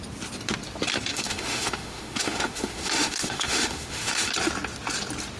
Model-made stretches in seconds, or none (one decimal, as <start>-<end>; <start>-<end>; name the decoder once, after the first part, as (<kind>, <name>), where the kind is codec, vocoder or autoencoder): 1.1-4.3 (autoencoder, DAC-VAE)